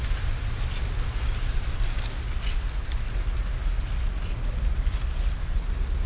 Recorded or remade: recorded